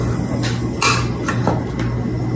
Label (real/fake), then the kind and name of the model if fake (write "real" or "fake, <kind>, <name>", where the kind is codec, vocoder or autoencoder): real